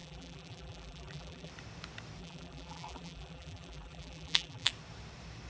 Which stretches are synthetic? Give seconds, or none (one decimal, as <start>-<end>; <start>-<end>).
0.0-1.5; 2.2-4.7